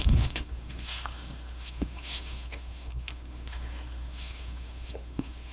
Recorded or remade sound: remade